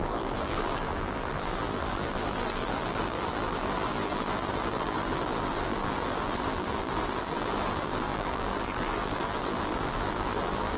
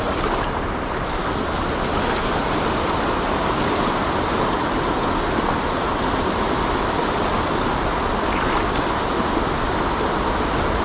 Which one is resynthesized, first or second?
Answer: first